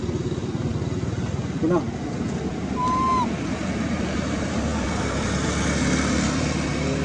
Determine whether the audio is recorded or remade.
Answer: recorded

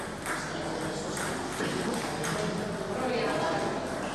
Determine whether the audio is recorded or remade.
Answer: recorded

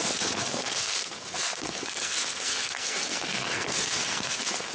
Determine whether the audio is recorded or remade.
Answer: remade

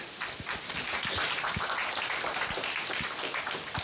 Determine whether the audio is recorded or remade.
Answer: recorded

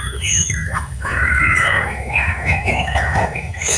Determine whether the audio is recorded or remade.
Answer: remade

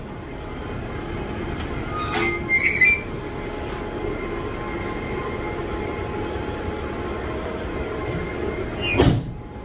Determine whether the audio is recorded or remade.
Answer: recorded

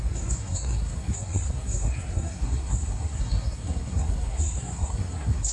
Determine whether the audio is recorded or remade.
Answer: remade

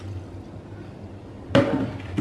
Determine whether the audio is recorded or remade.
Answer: recorded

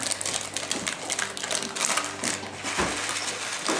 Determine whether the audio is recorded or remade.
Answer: recorded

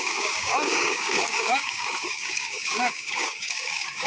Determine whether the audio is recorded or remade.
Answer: remade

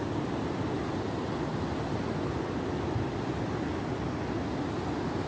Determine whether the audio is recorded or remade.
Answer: recorded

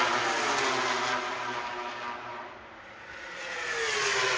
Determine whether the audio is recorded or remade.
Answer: recorded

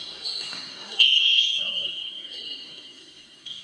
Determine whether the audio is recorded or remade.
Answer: remade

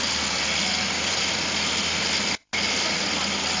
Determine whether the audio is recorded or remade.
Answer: recorded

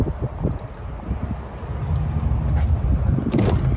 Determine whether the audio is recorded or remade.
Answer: recorded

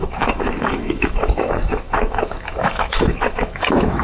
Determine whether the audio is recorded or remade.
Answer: remade